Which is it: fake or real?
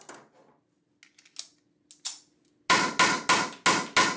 real